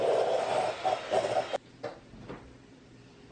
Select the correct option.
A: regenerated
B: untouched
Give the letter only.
B